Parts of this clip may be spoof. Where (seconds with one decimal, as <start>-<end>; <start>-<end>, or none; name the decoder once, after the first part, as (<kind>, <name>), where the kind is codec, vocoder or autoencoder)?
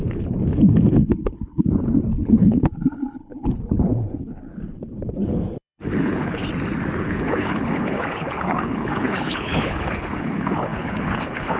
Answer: 0.0-6.4 (codec, HILCodec); 7.0-11.6